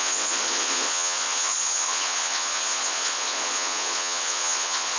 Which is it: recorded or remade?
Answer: remade